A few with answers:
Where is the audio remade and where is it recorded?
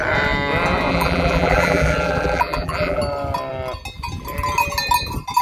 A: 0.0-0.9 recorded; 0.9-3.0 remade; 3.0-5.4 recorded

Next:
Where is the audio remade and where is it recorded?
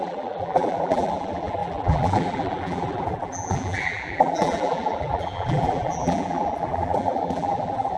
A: 0.0-8.0 remade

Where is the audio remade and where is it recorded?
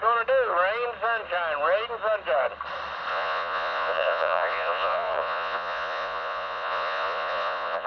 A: 0.0-3.1 recorded; 3.1-7.9 remade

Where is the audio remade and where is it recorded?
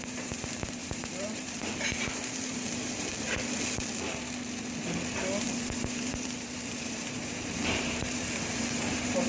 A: 0.0-3.1 remade; 3.1-5.4 recorded; 5.4-9.3 remade